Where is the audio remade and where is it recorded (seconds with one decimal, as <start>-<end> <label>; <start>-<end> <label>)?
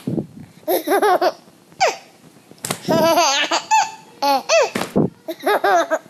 0.0-6.1 recorded